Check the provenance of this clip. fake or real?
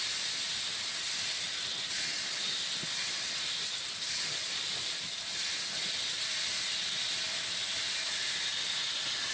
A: real